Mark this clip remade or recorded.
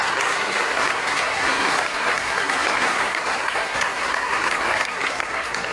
remade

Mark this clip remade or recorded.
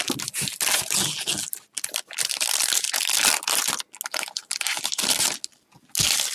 recorded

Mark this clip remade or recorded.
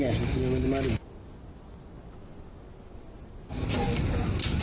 recorded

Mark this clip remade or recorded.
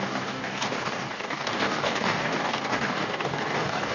remade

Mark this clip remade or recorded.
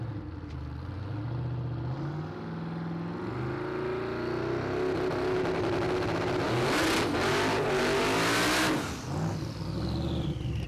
recorded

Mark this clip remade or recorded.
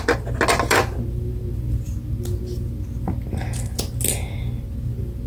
recorded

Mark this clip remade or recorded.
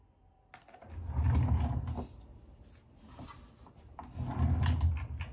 recorded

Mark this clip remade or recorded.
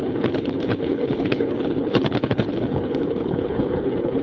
remade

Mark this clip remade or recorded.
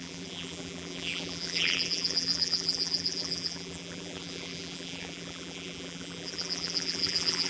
remade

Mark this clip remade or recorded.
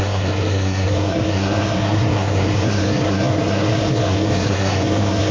remade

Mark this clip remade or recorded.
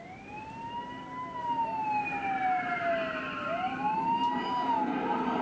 recorded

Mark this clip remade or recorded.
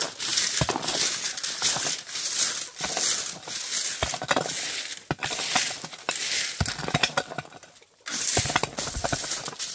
recorded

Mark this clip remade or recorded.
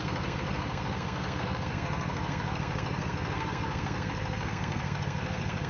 remade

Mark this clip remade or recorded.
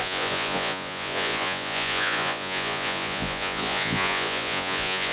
remade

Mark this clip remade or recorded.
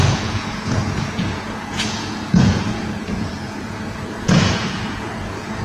remade